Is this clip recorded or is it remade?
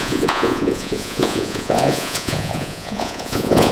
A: remade